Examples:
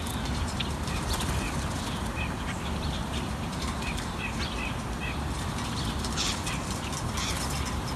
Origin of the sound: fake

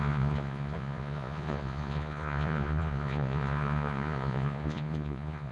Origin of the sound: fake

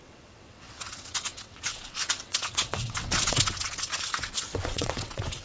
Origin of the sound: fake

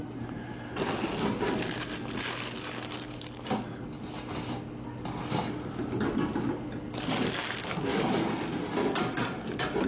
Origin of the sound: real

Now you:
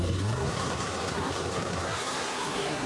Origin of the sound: fake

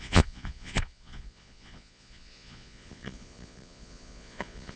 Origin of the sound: fake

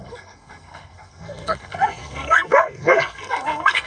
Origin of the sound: fake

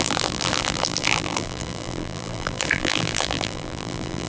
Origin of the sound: fake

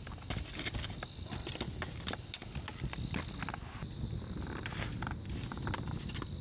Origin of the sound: real